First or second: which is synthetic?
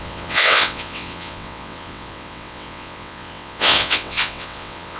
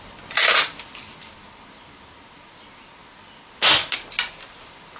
first